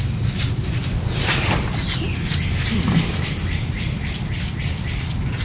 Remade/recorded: recorded